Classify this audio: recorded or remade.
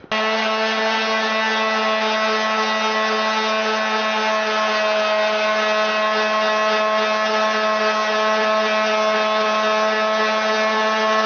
recorded